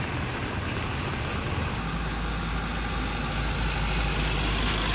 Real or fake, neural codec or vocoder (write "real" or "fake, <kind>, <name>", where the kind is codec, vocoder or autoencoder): real